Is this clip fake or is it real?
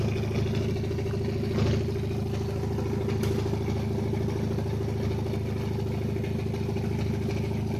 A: real